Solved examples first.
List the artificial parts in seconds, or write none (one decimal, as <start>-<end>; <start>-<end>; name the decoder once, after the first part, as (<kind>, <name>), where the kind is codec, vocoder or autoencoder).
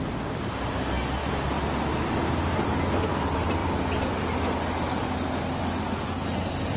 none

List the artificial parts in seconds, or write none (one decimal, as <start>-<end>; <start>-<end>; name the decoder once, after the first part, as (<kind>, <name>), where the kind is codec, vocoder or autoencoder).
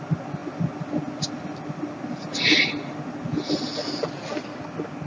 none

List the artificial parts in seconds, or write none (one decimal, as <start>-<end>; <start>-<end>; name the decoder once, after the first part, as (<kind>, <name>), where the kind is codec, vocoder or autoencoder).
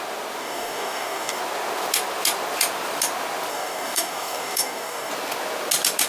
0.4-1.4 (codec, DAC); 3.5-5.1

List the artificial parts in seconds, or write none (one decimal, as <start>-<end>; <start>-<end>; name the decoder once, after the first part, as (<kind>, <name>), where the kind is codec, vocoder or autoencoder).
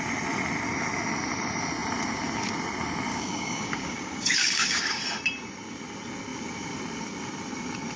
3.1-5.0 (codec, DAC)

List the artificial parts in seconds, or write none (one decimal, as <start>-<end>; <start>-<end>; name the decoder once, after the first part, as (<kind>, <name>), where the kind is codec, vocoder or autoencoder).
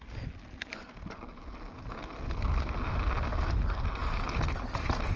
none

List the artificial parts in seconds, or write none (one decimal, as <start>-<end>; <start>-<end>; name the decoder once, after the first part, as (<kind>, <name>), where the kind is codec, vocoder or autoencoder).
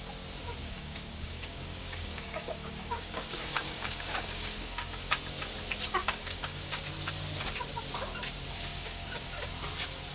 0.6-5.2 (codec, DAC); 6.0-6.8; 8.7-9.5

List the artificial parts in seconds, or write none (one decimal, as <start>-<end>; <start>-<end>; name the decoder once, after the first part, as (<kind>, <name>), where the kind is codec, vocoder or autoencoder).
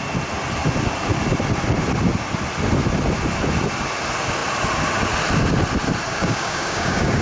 6.1-7.2 (codec, DAC)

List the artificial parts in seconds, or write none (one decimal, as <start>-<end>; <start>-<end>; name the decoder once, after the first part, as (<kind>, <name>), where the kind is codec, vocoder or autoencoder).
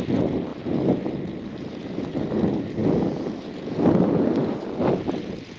none